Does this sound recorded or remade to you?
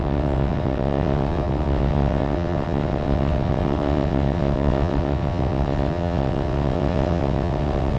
remade